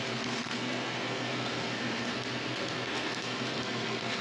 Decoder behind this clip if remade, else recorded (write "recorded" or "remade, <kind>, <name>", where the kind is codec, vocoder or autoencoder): remade, codec, SNAC